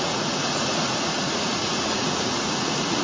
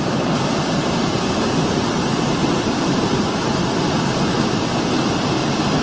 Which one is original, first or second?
second